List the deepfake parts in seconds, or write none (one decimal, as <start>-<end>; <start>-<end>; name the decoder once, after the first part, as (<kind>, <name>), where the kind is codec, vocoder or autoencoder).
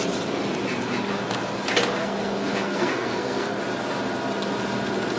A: 2.0-3.6 (codec, SNAC)